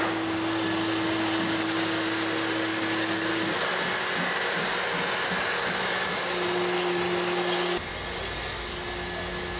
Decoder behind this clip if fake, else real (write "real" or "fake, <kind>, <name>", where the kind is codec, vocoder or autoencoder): real